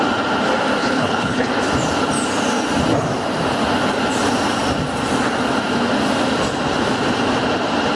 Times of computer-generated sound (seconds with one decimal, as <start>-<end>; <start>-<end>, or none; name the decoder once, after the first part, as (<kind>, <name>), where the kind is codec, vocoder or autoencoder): 0.8-1.5 (codec, HILCodec)